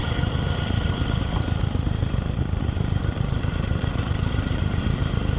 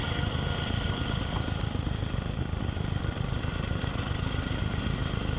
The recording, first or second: second